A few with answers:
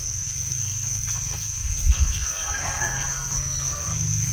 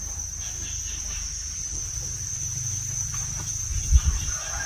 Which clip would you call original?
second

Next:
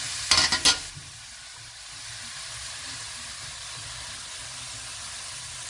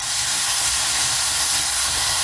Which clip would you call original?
first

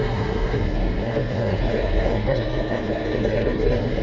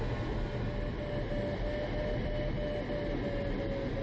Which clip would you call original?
second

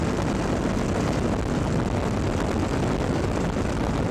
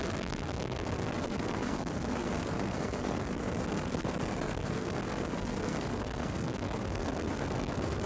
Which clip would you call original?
first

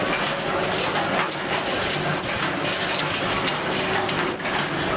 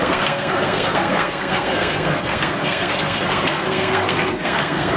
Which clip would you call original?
first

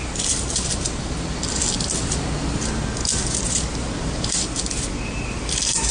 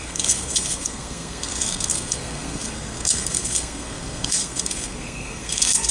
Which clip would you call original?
first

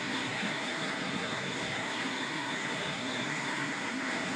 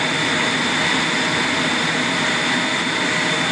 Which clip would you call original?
second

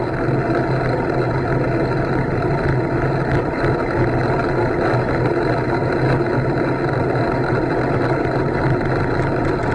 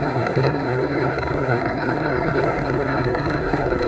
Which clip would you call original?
first